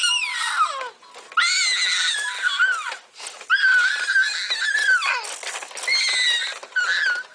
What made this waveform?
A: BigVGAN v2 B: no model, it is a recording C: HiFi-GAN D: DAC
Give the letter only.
B